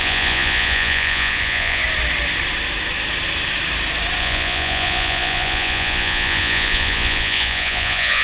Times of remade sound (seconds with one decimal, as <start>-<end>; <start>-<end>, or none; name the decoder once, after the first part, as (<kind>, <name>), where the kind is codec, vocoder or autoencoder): 0.0-1.8 (vocoder, Vocos); 4.2-8.2

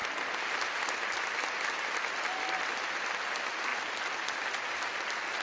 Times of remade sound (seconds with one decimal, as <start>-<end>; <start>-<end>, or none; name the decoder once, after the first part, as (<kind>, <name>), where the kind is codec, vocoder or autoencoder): none

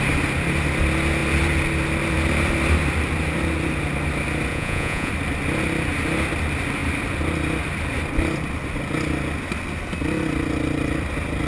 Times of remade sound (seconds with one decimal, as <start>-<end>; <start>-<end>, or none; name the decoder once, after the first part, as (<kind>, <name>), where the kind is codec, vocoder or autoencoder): 4.5-5.1 (vocoder, Vocos)